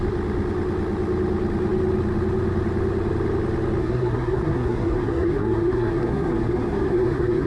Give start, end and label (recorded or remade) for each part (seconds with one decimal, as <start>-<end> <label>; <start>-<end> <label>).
0.0-3.8 recorded; 3.8-7.5 remade